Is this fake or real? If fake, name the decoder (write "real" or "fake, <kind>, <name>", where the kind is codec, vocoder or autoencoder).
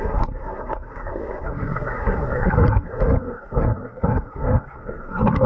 fake, codec, SNAC